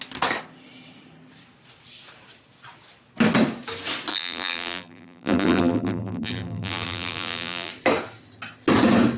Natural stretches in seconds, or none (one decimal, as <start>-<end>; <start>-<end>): 0.0-4.1; 7.7-9.2